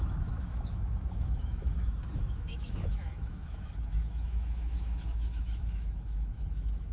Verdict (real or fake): fake